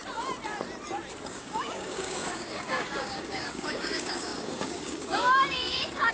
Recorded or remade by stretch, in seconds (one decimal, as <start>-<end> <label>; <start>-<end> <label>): 0.0-1.3 recorded; 1.3-6.1 remade